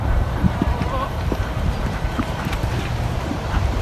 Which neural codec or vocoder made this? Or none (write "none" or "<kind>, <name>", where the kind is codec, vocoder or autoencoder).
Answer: vocoder, BigVGAN v2